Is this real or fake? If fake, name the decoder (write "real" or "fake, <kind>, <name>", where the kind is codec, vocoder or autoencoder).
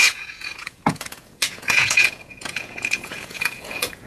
fake, vocoder, Vocos